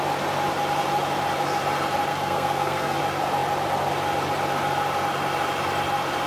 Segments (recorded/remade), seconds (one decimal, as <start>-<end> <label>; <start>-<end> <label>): 0.0-2.1 recorded; 2.1-3.0 remade; 3.0-6.3 recorded